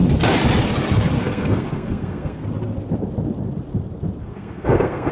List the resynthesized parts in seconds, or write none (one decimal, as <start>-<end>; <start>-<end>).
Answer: 1.2-2.4; 4.2-5.1